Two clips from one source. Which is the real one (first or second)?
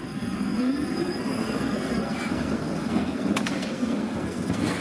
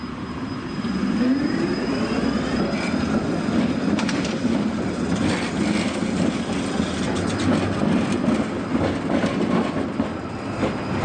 second